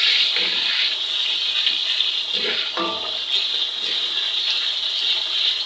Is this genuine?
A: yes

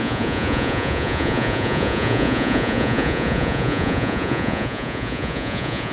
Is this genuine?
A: no